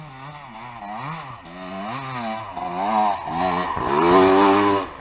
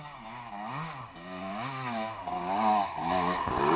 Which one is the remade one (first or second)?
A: second